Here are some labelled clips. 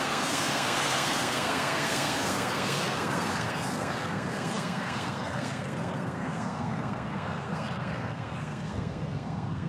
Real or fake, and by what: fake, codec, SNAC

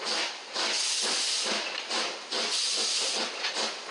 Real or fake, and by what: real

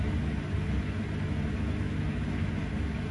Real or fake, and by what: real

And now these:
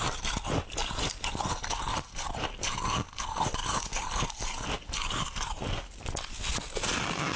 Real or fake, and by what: real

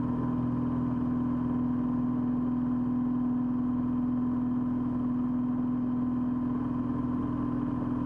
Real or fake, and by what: real